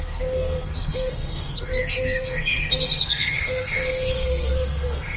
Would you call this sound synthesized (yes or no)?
yes